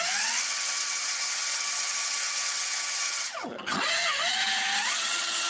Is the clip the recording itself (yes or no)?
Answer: no